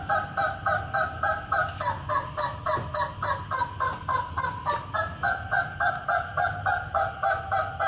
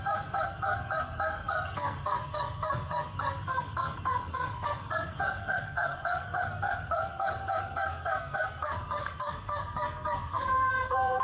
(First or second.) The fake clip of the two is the second